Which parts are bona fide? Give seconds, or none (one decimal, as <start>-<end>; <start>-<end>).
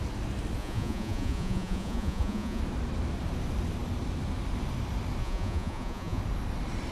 0.0-0.6; 2.6-5.2; 6.2-6.9